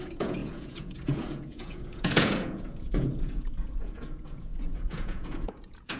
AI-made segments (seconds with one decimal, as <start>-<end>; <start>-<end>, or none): 0.0-6.0